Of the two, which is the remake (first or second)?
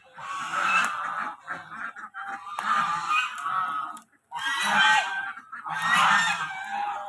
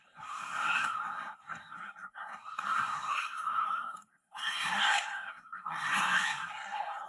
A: second